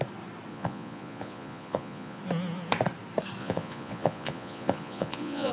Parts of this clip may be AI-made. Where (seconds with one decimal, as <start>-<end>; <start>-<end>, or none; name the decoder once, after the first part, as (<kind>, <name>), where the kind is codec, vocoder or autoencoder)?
0.5-2.2 (vocoder, Vocos); 3.4-5.5